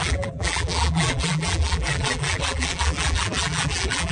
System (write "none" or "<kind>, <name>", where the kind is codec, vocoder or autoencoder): vocoder, BigVGAN v2